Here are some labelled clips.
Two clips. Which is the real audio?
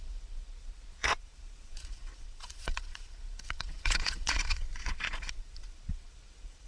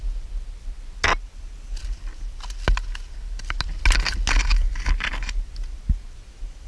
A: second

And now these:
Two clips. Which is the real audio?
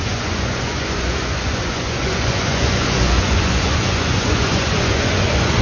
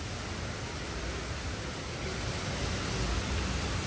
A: second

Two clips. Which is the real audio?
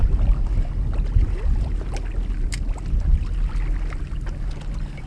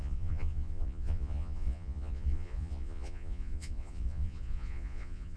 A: first